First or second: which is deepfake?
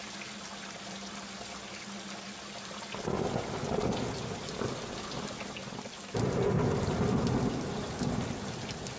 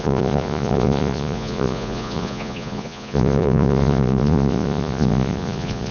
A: second